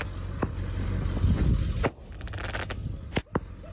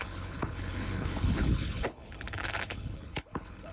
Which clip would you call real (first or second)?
first